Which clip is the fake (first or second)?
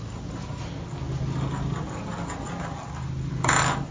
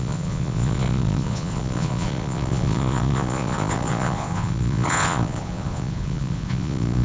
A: second